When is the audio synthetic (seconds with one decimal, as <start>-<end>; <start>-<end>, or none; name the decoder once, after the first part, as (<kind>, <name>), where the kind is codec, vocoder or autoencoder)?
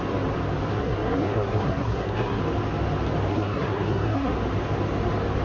0.7-2.4 (codec, SNAC); 3.3-4.3